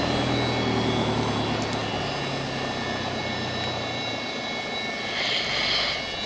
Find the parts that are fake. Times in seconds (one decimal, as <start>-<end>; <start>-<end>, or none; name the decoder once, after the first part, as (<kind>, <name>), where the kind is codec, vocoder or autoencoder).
none